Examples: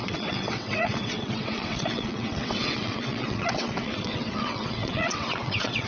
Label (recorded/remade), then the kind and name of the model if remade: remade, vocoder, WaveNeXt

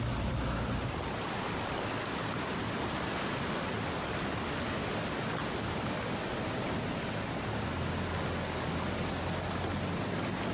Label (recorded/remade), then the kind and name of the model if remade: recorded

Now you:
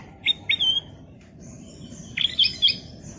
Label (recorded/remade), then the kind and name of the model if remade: remade, vocoder, BigVGAN v2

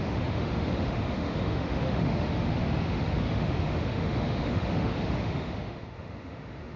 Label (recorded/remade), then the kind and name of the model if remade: remade, autoencoder, DAC-VAE